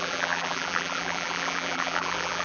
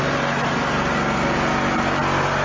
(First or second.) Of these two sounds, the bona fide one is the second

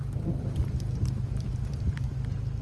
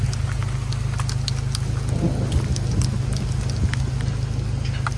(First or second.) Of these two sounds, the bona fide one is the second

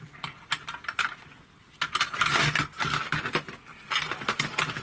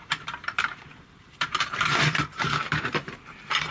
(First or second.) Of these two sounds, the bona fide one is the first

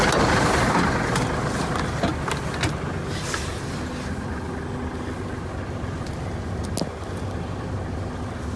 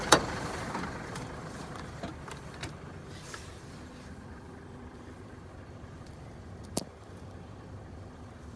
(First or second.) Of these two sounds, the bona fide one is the first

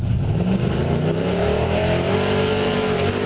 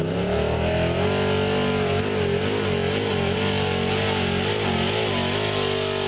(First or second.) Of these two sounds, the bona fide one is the second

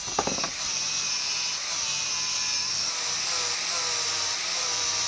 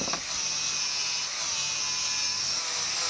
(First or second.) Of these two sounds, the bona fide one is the second